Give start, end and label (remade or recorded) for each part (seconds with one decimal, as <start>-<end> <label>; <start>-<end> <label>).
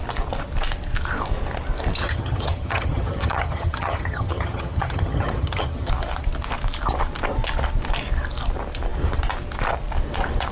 0.0-2.0 recorded; 2.0-5.9 remade; 5.9-10.5 recorded